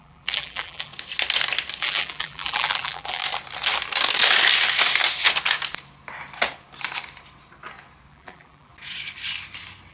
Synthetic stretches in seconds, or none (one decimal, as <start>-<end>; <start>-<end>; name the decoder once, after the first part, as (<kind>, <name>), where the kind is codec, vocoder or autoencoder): 0.0-0.9 (vocoder, BigVGAN v2); 1.8-3.2; 8.1-8.7